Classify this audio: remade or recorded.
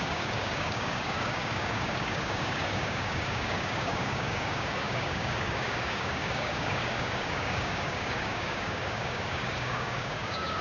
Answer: remade